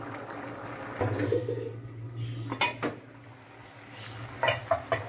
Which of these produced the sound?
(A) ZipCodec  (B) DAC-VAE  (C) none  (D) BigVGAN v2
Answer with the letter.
C